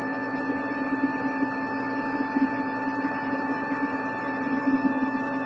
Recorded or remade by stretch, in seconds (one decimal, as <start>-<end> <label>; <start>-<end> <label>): 0.0-5.5 recorded